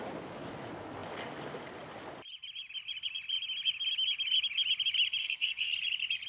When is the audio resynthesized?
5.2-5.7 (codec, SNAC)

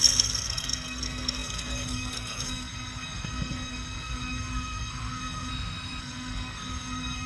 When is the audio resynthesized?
0.0-5.5 (codec, SNAC); 6.0-7.3